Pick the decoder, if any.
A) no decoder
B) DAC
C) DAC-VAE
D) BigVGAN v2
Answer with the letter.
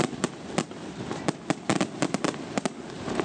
A